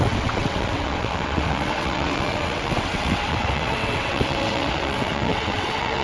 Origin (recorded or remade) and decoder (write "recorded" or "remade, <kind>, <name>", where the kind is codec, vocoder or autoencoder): remade, vocoder, WaveNeXt